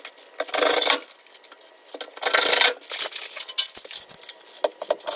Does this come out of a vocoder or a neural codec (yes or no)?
no